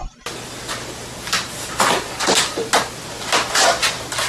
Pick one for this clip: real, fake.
real